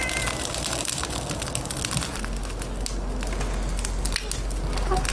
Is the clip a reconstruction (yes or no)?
no